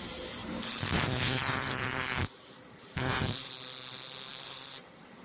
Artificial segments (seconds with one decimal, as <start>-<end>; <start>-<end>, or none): 0.4-3.5; 4.3-5.2